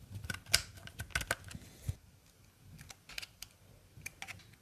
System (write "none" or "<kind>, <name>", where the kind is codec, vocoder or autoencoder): none